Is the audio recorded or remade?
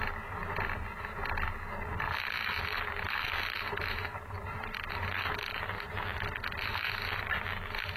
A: recorded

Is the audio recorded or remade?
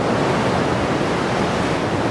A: recorded